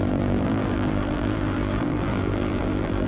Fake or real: fake